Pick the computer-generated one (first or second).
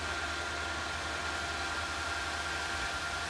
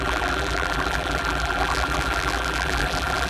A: second